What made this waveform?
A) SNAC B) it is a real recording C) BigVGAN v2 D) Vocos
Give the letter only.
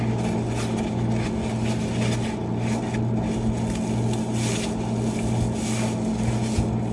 B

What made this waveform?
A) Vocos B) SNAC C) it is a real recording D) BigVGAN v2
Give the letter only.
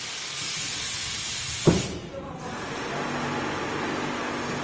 C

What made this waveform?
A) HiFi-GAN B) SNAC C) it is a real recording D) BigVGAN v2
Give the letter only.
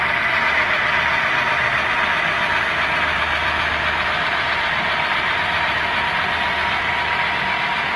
C